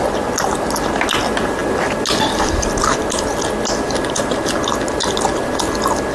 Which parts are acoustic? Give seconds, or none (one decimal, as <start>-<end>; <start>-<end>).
0.0-6.1